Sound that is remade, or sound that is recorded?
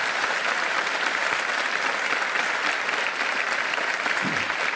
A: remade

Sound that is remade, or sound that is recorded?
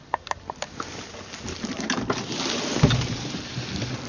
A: recorded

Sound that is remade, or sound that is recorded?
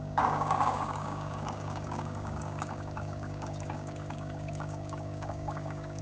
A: remade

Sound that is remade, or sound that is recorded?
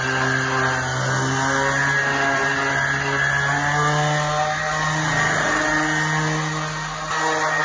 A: recorded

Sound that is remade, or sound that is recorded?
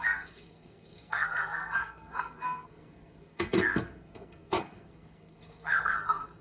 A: remade